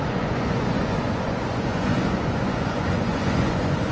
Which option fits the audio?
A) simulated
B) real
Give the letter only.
A